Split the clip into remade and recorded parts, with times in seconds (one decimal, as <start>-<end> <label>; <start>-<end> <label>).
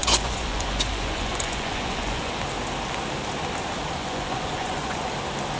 0.0-2.3 remade; 2.3-4.0 recorded; 4.0-5.1 remade; 5.1-5.6 recorded